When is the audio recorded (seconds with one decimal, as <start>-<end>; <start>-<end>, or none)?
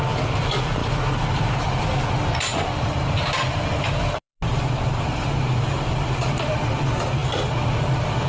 0.0-2.5; 6.8-7.2